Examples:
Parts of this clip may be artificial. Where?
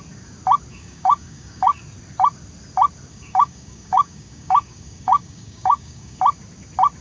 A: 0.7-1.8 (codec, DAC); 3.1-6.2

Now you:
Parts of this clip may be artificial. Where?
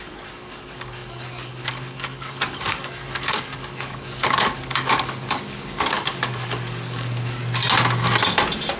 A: 0.0-7.4 (codec, DAC)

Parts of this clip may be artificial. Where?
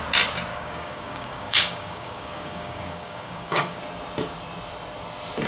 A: 0.5-3.8 (codec, DAC)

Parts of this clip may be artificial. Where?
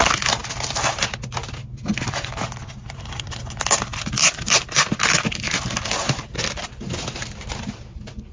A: none